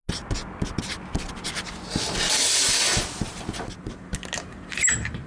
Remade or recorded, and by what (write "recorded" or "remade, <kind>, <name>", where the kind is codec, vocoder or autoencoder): recorded